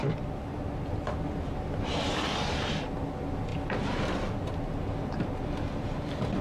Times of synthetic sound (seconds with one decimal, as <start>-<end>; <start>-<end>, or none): 0.0-0.5; 3.5-4.8